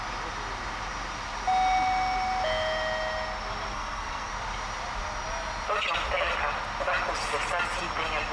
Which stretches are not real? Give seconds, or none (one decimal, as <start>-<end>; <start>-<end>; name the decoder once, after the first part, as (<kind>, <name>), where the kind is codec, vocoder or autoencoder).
3.7-4.3 (codec, SNAC)